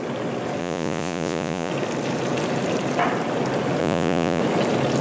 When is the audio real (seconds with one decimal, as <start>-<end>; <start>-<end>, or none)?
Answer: 0.0-0.6; 1.7-3.8; 4.4-5.0